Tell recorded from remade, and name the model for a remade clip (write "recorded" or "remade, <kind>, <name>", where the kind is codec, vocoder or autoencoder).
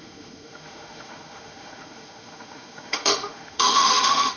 remade, autoencoder, DAC-VAE